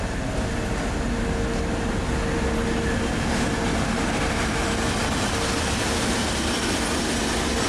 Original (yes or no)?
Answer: yes